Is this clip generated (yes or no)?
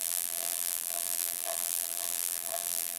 yes